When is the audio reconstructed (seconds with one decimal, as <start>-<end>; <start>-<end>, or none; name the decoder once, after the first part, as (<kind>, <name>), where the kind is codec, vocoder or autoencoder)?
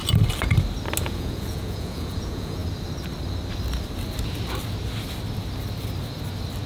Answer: 1.0-2.6 (vocoder, Vocos)